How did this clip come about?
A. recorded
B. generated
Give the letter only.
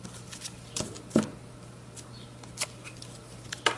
A